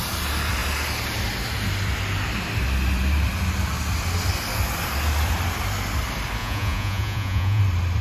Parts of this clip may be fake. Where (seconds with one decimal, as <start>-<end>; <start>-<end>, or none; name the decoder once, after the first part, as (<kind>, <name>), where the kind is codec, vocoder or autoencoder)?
6.4-7.6 (vocoder, Vocos)